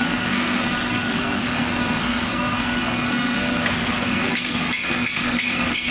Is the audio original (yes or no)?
no